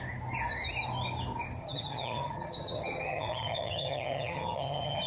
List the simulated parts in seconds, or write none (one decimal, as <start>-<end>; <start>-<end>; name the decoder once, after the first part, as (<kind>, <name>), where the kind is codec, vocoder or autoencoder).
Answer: 1.6-5.1 (vocoder, HiFi-GAN)